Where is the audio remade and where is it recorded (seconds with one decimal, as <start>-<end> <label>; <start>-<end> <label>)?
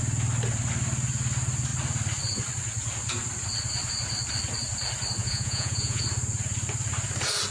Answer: 0.0-5.2 recorded; 5.2-6.0 remade; 6.0-7.5 recorded